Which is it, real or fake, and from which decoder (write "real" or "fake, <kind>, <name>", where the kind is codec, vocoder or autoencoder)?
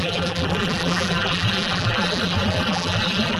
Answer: fake, vocoder, BigVGAN v2